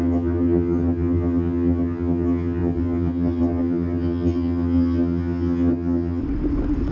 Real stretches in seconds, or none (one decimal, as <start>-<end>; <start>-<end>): 6.2-6.9